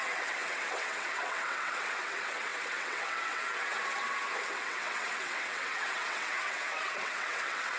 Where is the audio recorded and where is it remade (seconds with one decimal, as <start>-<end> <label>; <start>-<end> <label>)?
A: 0.0-7.8 remade